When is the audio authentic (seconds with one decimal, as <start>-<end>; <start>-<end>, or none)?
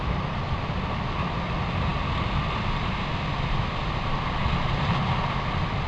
0.0-5.9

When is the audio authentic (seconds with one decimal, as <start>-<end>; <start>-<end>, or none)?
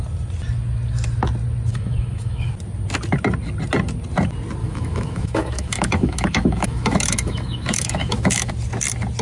0.0-1.7; 2.5-4.6; 8.5-9.2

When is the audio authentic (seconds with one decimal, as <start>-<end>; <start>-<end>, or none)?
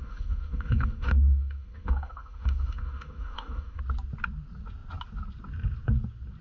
3.8-6.4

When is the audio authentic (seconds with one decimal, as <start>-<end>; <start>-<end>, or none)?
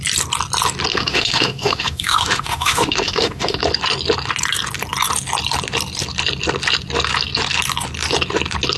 0.0-0.9; 3.6-8.8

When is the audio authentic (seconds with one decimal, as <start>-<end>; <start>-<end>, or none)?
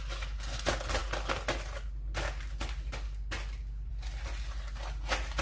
0.0-5.4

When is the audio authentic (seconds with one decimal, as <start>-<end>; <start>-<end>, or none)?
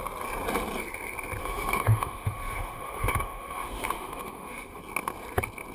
0.0-1.4; 4.8-5.7